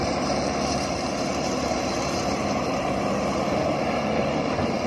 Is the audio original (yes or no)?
no